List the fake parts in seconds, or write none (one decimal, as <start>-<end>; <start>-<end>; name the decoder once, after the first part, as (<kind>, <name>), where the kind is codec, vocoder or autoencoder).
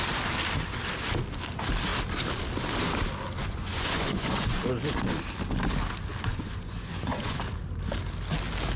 3.4-4.6 (vocoder, Vocos); 6.3-7.4